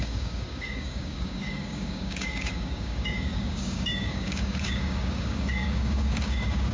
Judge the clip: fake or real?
fake